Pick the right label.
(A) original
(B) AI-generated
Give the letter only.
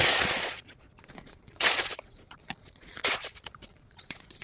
B